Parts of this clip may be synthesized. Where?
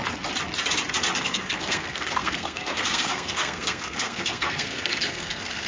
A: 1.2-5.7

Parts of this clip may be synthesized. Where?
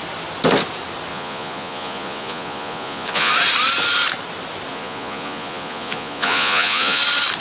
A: 1.1-3.3; 4.7-7.0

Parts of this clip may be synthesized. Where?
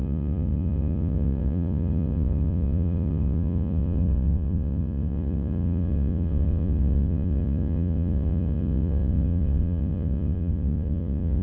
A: 0.0-11.4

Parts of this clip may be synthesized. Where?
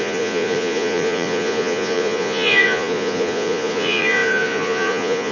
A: 0.0-5.3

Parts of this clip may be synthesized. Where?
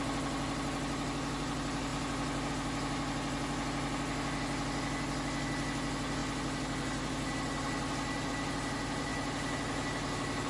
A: none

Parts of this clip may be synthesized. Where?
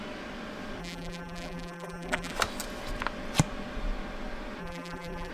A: 0.8-2.3; 4.6-5.3